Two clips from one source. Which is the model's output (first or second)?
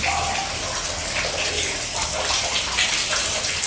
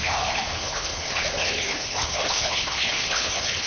second